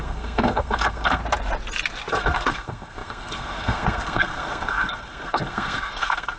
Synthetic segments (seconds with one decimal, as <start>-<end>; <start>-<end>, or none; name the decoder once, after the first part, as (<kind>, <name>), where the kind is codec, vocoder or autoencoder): 0.0-1.2 (codec, SNAC); 2.1-6.4